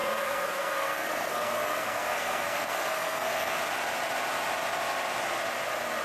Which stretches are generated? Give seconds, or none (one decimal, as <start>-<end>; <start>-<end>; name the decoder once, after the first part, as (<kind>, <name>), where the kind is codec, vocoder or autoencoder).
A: 0.0-3.6 (codec, SNAC)